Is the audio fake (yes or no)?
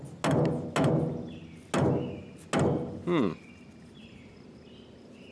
no